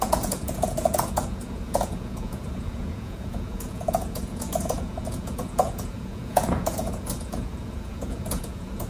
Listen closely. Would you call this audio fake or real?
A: fake